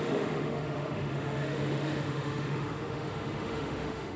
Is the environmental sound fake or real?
fake